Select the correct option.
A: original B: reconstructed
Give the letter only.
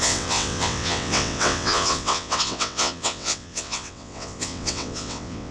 B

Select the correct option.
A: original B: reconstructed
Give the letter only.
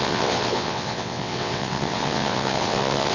B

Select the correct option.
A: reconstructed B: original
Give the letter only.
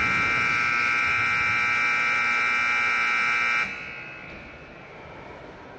B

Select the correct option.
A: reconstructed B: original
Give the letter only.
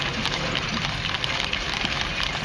B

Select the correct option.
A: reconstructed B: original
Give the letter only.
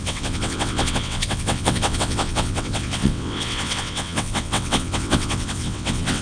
A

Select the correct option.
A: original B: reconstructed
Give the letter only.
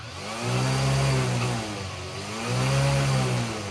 A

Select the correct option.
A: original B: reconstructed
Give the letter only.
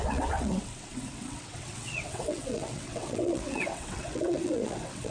B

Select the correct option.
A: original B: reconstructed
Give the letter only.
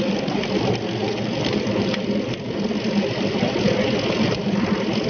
A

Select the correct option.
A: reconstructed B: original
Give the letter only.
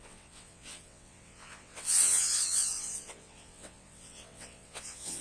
A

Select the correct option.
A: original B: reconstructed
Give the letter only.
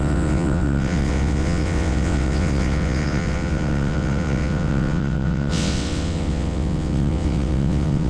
B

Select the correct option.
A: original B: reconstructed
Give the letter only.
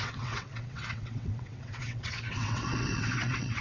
B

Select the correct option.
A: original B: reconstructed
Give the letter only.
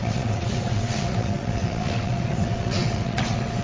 B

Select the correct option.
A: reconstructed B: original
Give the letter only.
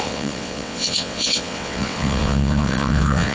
A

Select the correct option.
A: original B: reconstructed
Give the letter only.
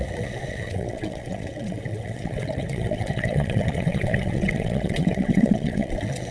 B